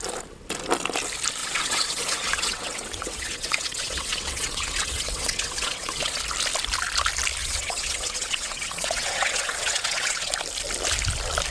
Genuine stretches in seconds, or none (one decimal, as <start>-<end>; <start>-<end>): 0.0-1.4; 6.2-7.4; 10.3-11.5